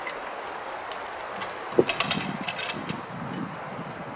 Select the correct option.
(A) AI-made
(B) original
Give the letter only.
B